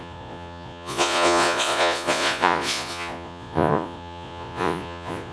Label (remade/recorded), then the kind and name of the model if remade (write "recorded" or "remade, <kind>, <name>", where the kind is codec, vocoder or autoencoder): remade, vocoder, Vocos